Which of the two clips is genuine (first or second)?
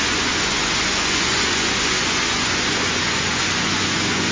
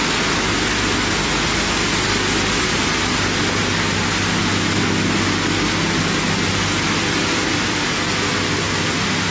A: second